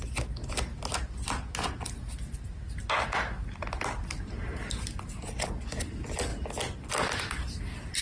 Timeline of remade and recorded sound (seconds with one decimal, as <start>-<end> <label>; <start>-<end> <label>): 0.0-8.0 recorded